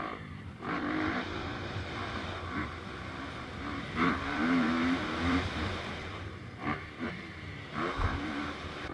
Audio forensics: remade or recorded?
remade